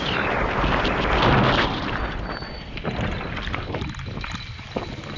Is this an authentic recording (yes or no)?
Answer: yes